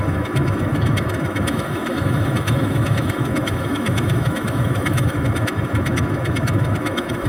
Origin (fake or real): fake